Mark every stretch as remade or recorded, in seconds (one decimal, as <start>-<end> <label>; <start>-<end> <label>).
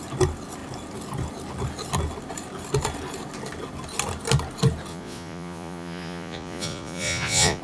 0.0-4.9 recorded; 4.9-7.6 remade